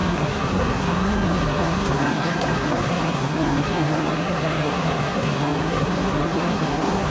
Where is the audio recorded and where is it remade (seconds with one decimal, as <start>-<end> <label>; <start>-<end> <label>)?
0.0-7.1 remade